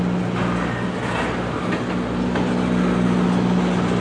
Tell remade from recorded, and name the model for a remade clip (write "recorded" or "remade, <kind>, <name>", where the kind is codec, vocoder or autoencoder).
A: recorded